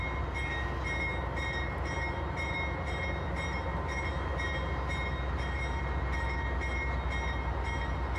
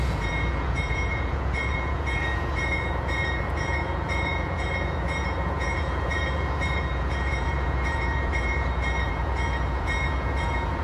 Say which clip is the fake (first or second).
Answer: second